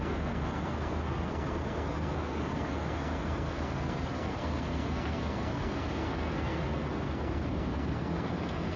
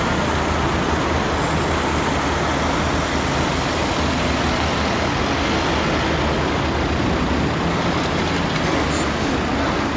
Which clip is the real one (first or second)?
second